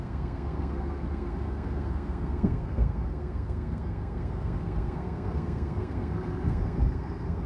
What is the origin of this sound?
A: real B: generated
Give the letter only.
B